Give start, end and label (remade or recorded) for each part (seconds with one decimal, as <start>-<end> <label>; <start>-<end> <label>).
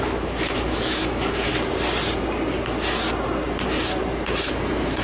0.0-1.5 remade; 1.5-4.5 recorded; 4.5-5.0 remade